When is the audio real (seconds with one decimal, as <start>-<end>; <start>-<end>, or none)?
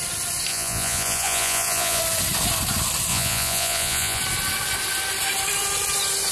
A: 0.0-0.5; 2.0-3.1; 4.2-6.3